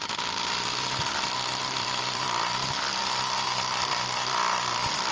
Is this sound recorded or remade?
remade